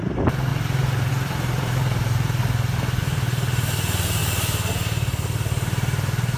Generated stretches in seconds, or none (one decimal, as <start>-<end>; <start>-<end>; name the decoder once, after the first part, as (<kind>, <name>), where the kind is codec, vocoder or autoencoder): 0.0-0.5 (vocoder, BigVGAN v2); 1.1-2.4; 3.0-4.2